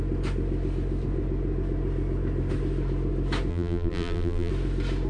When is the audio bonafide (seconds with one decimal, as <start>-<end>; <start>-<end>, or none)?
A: 0.0-3.5; 4.5-5.1